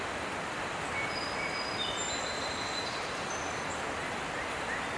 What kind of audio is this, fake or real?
real